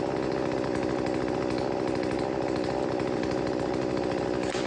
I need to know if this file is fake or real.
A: real